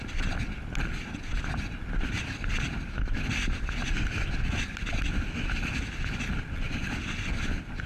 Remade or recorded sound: remade